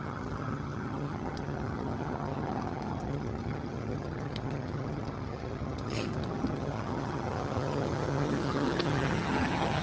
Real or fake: fake